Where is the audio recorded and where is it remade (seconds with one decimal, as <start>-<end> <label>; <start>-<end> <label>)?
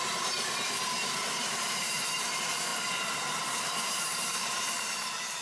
0.0-2.7 remade; 2.7-3.5 recorded; 3.5-5.4 remade